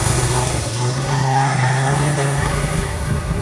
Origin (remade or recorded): remade